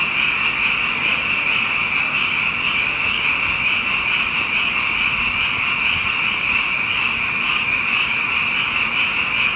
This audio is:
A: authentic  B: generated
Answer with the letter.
A